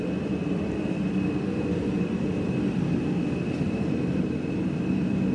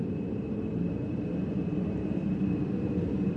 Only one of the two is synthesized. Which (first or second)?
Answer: second